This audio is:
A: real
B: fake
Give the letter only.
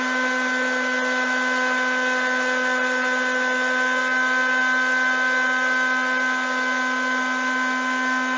A